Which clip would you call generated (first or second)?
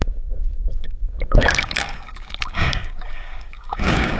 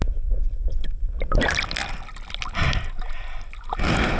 first